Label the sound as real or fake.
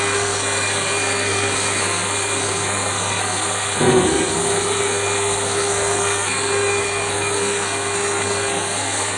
fake